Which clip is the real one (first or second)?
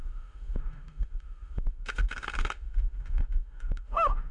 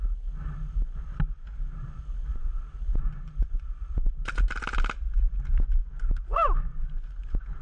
second